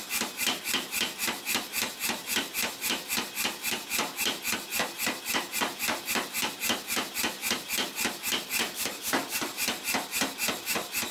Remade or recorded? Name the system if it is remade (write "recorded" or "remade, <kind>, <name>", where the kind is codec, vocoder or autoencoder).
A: remade, vocoder, BigVGAN v2